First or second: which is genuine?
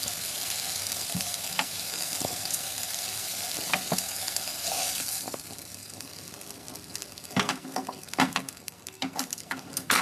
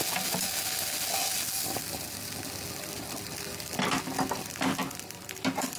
second